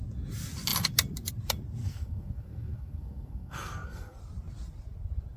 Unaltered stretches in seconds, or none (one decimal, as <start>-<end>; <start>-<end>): 0.0-1.8; 4.2-5.4